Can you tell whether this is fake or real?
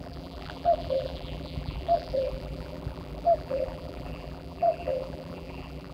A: fake